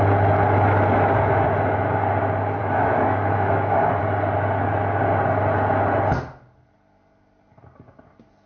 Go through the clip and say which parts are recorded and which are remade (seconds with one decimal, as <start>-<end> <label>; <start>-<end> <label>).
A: 0.0-2.6 recorded; 2.6-4.0 remade; 4.0-8.5 recorded